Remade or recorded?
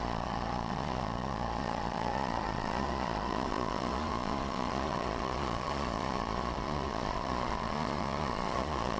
remade